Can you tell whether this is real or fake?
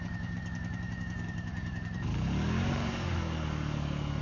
fake